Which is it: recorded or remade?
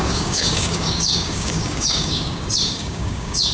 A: remade